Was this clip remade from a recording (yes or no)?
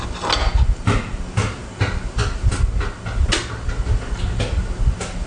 no